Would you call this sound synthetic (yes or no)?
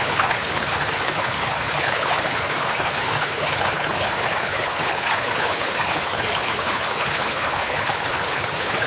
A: yes